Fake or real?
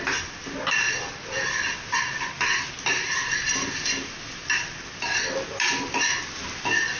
real